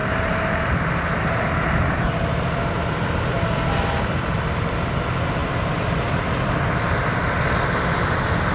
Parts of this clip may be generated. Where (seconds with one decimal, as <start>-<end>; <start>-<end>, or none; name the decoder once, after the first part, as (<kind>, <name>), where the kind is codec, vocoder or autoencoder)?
0.0-1.3 (vocoder, BigVGAN v2)